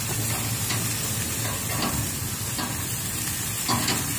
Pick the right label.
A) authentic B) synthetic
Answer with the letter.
A